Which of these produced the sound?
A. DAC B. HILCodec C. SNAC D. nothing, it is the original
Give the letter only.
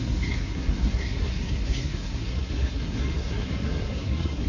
C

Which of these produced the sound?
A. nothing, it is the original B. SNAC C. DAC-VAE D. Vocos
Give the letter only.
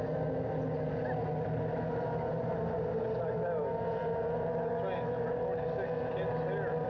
A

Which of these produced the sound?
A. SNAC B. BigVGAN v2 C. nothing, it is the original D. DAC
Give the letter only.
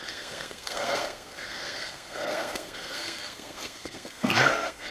A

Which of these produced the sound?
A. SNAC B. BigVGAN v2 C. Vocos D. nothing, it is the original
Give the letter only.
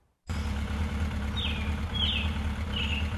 D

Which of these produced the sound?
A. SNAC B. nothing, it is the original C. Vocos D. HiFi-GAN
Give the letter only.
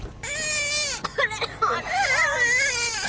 B